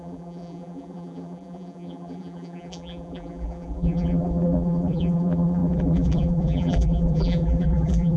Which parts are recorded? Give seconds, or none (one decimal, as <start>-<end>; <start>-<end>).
none